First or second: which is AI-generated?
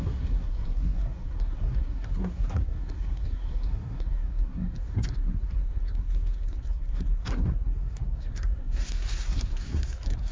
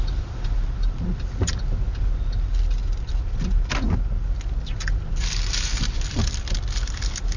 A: first